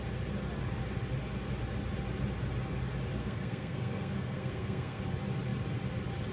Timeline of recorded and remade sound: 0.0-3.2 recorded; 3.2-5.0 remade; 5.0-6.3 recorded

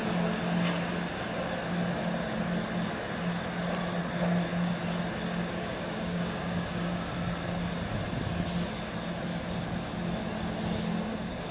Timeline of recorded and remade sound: 0.0-5.3 recorded; 5.3-7.1 remade; 7.1-11.1 recorded; 11.1-11.5 remade

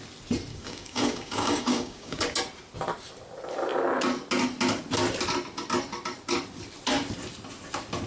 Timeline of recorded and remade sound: 0.0-0.5 recorded; 0.5-2.2 remade; 2.2-8.1 recorded